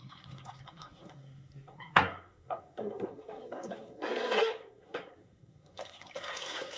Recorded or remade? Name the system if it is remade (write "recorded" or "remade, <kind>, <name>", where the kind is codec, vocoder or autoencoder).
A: remade, codec, SNAC